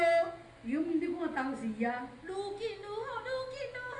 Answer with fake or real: real